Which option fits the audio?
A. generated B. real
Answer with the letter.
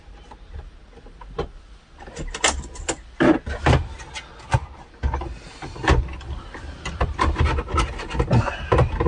B